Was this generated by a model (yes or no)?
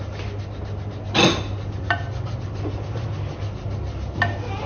no